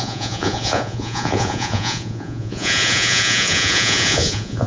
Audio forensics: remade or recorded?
remade